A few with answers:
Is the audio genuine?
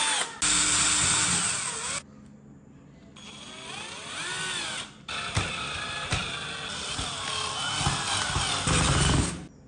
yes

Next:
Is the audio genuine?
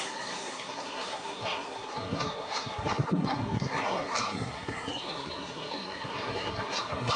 no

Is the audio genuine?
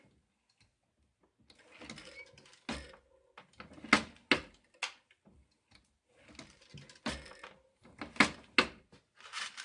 yes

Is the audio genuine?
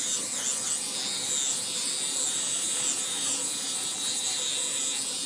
yes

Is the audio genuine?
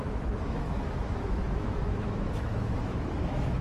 no